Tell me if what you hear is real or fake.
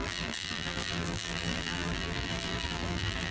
fake